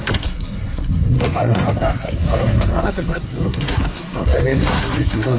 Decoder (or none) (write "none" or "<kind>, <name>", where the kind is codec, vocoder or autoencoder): codec, SNAC